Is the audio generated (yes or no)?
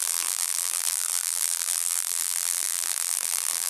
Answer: yes